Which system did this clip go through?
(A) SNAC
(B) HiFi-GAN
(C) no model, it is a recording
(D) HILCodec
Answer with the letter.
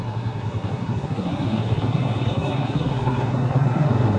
A